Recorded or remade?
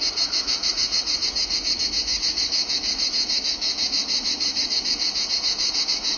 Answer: remade